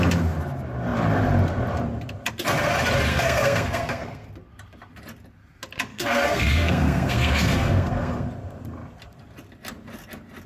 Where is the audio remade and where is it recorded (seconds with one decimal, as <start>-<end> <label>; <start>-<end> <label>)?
0.0-3.1 recorded; 3.1-4.3 remade; 4.3-5.9 recorded; 5.9-8.3 remade; 8.3-10.5 recorded